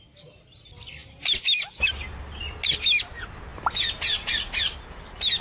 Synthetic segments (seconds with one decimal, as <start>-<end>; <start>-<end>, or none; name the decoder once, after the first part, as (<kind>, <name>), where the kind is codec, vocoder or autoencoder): none